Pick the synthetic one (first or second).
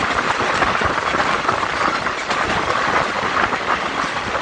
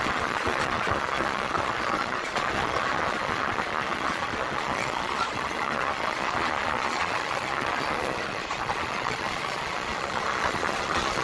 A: second